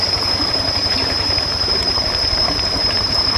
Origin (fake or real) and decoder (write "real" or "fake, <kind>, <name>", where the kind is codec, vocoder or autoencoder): fake, vocoder, BigVGAN v2